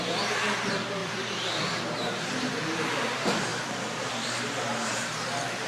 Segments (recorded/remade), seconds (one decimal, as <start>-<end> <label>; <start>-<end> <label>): 0.0-1.0 recorded; 1.0-1.5 remade; 1.5-3.5 recorded; 3.5-4.4 remade; 4.4-5.7 recorded